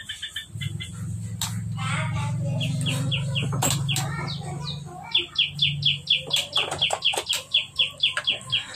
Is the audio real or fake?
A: real